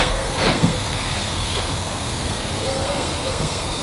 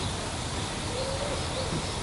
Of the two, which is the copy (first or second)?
first